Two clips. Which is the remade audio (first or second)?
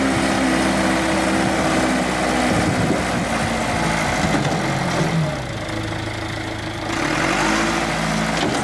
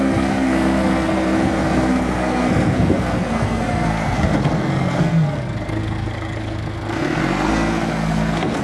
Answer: second